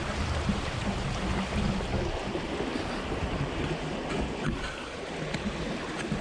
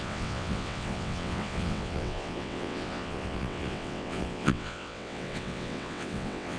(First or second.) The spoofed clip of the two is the second